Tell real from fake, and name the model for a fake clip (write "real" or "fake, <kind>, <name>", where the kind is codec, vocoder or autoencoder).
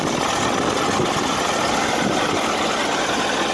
real